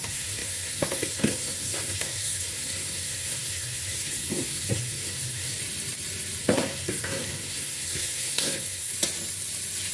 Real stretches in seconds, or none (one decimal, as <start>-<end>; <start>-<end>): 5.6-6.4; 8.9-9.9